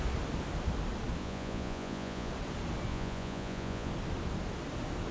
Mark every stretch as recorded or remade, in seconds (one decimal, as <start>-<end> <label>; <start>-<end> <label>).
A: 0.0-1.2 recorded; 1.2-2.3 remade; 2.3-2.9 recorded; 2.9-3.9 remade; 3.9-5.1 recorded